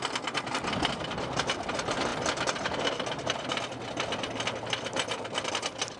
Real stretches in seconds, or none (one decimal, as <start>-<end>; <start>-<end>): 0.0-6.0